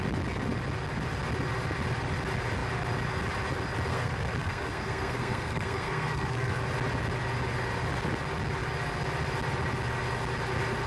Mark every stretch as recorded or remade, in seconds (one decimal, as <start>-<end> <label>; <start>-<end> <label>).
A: 0.0-3.9 recorded; 3.9-6.6 remade; 6.6-10.9 recorded